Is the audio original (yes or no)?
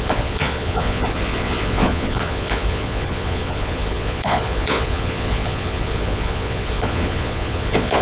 no